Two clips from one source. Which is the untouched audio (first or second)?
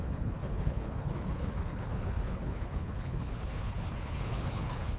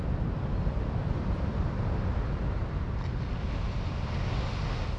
second